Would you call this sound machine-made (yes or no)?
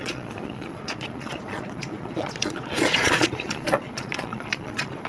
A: yes